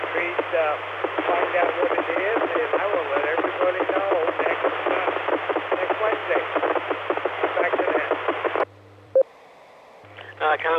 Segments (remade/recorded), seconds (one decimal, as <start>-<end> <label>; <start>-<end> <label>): 0.0-2.6 remade; 2.6-5.7 recorded; 5.7-6.2 remade; 6.2-6.9 recorded; 6.9-10.8 remade